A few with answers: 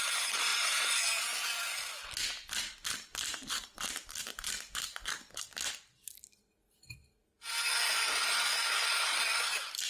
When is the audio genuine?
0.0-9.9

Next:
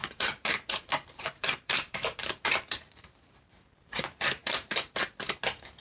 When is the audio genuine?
3.5-4.4; 5.0-5.8